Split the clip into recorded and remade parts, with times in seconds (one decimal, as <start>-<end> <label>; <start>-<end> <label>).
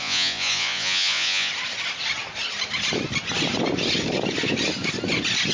0.0-1.5 remade; 1.5-5.5 recorded